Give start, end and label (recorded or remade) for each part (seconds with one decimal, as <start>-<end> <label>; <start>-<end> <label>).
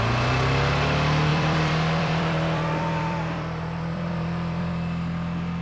0.0-1.3 recorded; 1.3-4.7 remade; 4.7-5.6 recorded